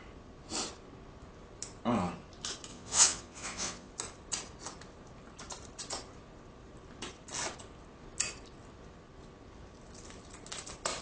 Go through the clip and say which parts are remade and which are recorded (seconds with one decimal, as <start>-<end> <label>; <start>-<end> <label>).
0.0-2.7 recorded; 2.7-3.9 remade; 3.9-11.0 recorded

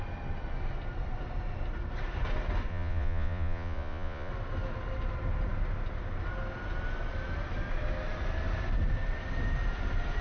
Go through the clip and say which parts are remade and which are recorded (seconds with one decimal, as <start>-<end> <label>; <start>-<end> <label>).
0.0-2.7 recorded; 2.7-4.3 remade; 4.3-10.2 recorded

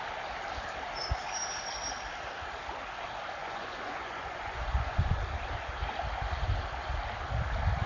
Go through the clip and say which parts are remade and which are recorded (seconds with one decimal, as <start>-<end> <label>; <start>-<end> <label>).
0.0-3.4 recorded; 3.4-5.2 remade; 5.2-7.9 recorded

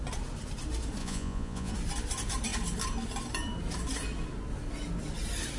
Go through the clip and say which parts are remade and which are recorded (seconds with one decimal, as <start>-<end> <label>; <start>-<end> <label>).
0.0-1.0 recorded; 1.0-1.7 remade; 1.7-5.6 recorded

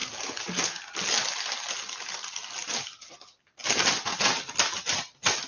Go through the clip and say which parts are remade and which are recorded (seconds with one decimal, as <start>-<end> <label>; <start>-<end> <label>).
0.0-5.5 recorded